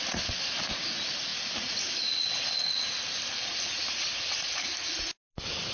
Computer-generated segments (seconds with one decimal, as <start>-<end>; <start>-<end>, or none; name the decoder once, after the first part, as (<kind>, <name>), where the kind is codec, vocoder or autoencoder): none